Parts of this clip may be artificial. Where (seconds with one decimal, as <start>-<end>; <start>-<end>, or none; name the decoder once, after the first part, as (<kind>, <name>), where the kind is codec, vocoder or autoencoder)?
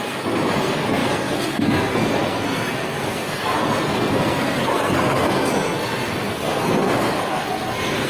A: 0.0-8.1 (codec, SNAC)